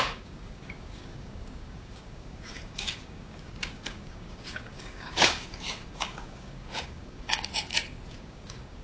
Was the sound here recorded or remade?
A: remade